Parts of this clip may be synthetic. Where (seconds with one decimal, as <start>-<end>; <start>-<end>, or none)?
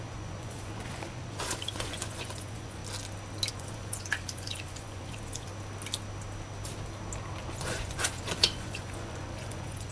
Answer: 0.0-2.8; 3.5-5.5; 7.4-9.9